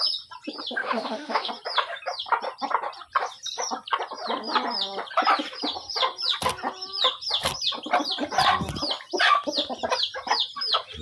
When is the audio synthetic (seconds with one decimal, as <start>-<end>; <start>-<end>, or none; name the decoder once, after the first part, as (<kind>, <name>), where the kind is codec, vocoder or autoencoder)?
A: 0.8-1.5 (autoencoder, DAC-VAE)